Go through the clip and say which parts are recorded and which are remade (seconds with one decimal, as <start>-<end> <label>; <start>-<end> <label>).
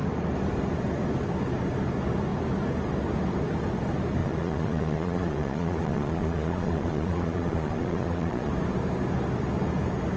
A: 0.0-4.2 recorded; 4.2-8.5 remade; 8.5-10.2 recorded